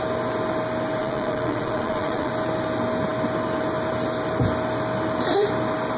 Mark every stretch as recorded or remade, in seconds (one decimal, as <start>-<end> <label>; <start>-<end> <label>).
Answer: 0.0-1.0 recorded; 1.0-2.3 remade; 2.3-6.0 recorded